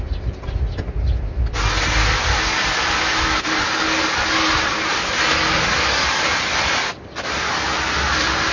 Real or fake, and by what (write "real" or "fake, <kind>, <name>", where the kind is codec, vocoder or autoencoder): real